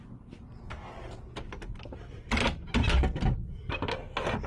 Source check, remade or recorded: recorded